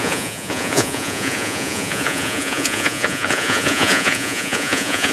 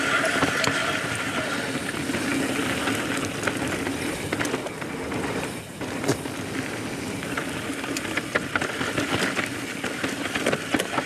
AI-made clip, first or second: first